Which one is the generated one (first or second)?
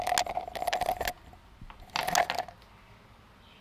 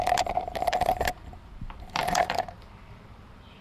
second